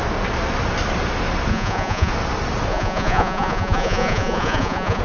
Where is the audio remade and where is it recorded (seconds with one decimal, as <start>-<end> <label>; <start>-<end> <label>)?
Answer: 0.0-1.5 recorded; 1.5-2.1 remade; 2.1-2.7 recorded; 2.7-5.0 remade